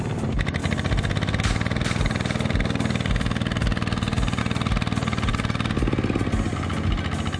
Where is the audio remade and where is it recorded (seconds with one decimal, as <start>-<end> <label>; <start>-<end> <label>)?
0.0-7.4 recorded